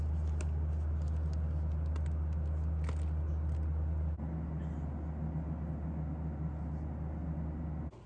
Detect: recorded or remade recorded